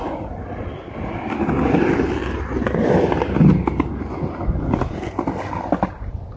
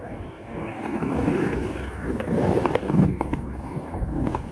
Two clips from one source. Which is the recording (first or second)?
first